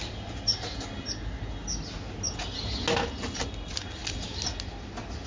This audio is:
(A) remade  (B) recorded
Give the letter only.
B